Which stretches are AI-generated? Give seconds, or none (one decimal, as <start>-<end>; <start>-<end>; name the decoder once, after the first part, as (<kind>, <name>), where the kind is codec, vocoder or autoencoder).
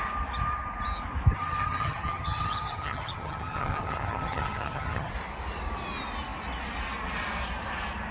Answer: 1.3-5.1 (vocoder, HiFi-GAN)